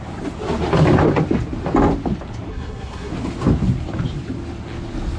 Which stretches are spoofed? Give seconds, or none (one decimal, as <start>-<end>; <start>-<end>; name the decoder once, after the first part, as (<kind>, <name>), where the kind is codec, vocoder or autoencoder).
2.5-3.1 (codec, SNAC)

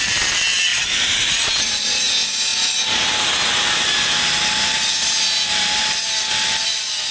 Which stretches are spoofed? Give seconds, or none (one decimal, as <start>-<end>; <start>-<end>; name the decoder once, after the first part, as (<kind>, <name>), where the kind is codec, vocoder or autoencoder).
0.7-2.1 (vocoder, BigVGAN v2)

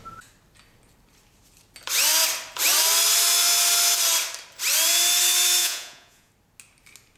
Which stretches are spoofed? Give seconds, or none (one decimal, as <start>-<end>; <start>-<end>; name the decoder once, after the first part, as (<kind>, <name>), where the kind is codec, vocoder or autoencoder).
5.6-6.3 (vocoder, Vocos)

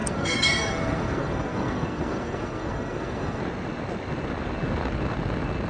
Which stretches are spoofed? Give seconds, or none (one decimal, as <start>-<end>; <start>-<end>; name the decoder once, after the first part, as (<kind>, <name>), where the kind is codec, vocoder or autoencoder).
0.0-3.4 (codec, SNAC)

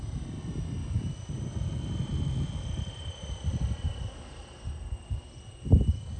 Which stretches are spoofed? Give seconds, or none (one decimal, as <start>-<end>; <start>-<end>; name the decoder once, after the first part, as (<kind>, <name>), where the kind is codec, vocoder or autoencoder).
none

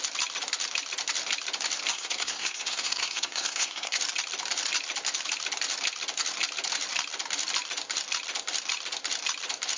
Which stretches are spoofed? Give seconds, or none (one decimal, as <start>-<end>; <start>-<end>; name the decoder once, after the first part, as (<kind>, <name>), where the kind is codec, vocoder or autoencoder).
1.9-4.0 (codec, SNAC)